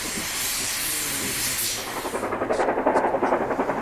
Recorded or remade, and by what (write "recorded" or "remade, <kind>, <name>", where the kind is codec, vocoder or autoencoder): recorded